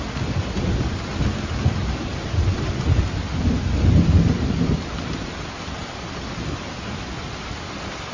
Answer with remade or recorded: recorded